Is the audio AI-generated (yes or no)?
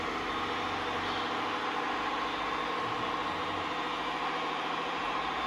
no